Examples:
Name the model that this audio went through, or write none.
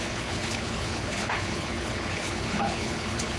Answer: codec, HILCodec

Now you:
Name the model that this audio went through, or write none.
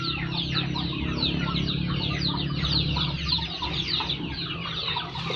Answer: none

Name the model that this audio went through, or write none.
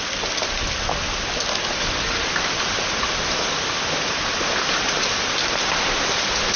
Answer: none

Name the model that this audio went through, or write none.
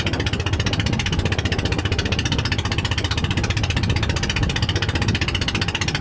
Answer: none